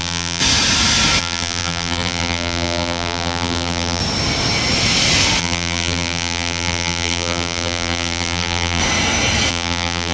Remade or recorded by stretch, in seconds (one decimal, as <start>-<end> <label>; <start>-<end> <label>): 0.0-0.4 remade; 0.4-1.2 recorded; 1.2-4.0 remade; 4.0-5.4 recorded; 5.4-8.8 remade; 8.8-9.5 recorded; 9.5-10.1 remade